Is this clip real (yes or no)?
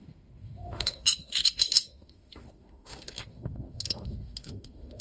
no